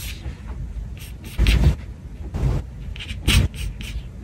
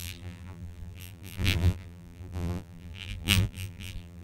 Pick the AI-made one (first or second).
second